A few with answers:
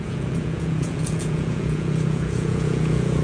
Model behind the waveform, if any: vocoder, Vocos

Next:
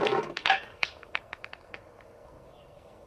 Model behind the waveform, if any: codec, SNAC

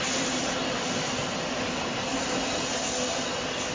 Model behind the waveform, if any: none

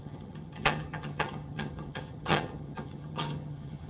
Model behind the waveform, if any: vocoder, HiFi-GAN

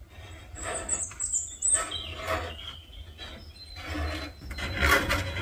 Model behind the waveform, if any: none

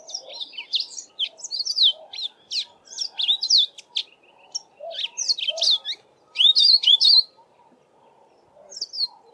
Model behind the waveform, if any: none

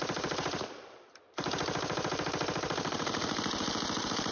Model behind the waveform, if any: vocoder, BigVGAN v2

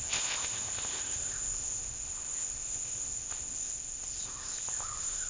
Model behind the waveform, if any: codec, ZipCodec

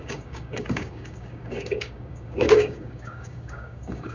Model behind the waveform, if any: codec, DAC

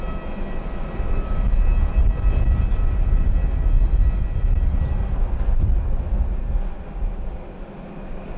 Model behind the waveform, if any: none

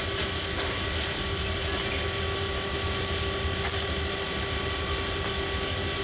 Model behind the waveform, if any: none